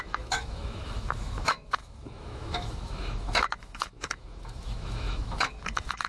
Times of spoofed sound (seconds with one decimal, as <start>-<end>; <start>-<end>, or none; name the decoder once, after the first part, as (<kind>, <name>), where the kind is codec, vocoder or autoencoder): 0.0-6.1 (autoencoder, DAC-VAE)